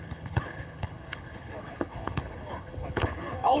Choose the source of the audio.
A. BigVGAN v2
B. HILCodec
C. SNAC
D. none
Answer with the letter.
B